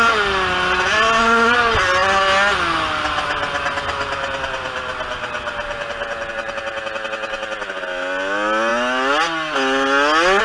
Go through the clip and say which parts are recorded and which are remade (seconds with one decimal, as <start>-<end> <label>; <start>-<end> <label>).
0.0-10.4 recorded